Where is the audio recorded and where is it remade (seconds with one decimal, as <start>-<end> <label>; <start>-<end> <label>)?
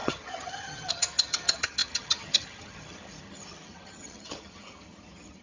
0.0-5.4 remade